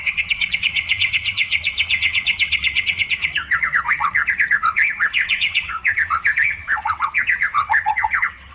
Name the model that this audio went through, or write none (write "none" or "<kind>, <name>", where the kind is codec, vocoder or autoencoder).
vocoder, WaveNeXt